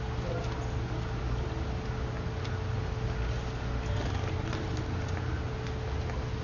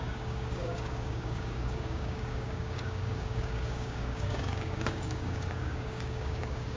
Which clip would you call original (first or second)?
first